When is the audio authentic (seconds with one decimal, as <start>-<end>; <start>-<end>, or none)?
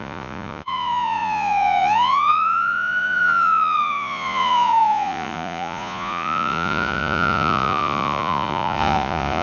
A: none